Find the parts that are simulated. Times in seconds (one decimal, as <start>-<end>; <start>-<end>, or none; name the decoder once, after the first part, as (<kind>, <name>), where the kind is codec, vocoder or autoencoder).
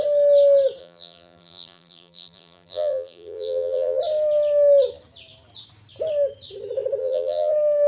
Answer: 0.8-4.0 (vocoder, BigVGAN v2); 7.0-7.5